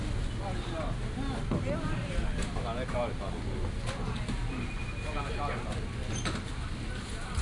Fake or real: real